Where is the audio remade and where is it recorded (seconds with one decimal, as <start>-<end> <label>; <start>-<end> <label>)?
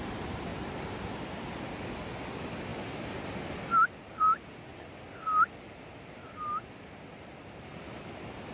0.0-0.5 recorded; 0.5-1.7 remade; 1.7-8.5 recorded